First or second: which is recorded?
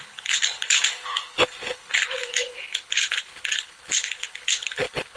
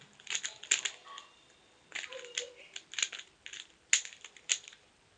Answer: second